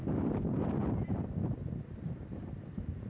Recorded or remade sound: recorded